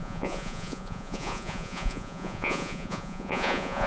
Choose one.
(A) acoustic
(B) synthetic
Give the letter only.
B